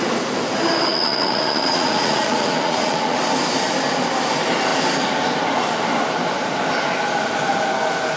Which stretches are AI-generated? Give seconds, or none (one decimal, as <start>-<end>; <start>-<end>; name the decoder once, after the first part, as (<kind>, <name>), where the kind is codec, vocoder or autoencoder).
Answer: 0.9-3.2 (vocoder, Vocos)